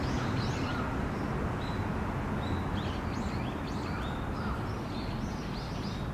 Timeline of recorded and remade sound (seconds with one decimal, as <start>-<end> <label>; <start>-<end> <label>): 0.0-6.1 recorded

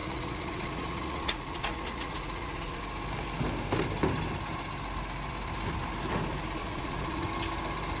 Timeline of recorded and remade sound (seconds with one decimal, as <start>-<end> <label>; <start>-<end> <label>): 0.0-2.8 remade; 2.8-6.6 recorded; 6.6-7.3 remade; 7.3-8.0 recorded

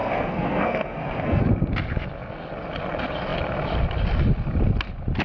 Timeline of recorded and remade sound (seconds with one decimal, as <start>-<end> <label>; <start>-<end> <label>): 0.0-1.4 remade; 1.4-5.2 recorded

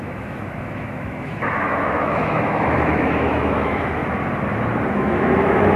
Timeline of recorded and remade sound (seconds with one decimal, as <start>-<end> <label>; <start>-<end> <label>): 0.0-4.0 remade; 4.0-4.9 recorded; 4.9-5.8 remade

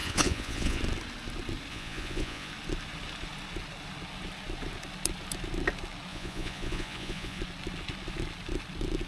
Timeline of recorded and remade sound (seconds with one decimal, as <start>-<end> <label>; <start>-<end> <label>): 0.0-0.8 remade; 0.8-1.7 recorded; 1.7-2.5 remade; 2.5-6.1 recorded; 6.1-7.4 remade; 7.4-9.1 recorded